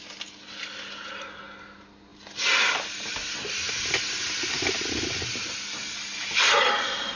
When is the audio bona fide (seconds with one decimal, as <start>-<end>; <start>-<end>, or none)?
0.0-7.2